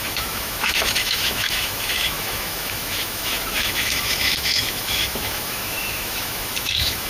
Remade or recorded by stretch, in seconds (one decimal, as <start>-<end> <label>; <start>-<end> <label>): 0.0-7.1 remade

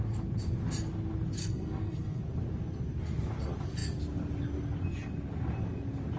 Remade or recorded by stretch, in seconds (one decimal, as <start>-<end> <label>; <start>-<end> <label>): 0.0-1.4 recorded; 1.4-2.2 remade; 2.2-6.2 recorded

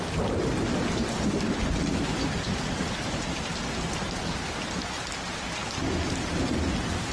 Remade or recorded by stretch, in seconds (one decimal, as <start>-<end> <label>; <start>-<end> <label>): 0.0-7.1 recorded

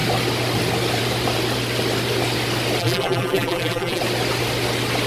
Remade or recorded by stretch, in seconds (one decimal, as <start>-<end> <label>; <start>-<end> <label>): 0.0-2.8 recorded; 2.8-4.0 remade; 4.0-5.1 recorded

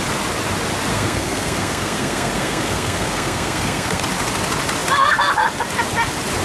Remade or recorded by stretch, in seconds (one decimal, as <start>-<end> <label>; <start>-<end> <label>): 0.0-0.9 recorded; 0.9-4.0 remade; 4.0-6.4 recorded